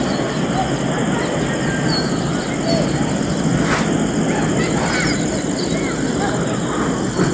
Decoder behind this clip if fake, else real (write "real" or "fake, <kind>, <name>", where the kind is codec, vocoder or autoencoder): real